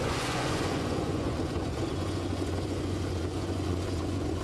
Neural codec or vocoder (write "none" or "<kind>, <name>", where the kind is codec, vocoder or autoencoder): vocoder, Vocos